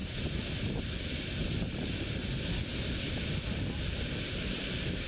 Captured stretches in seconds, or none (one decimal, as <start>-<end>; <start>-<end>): 0.0-5.1